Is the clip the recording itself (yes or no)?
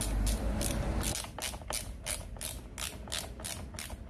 yes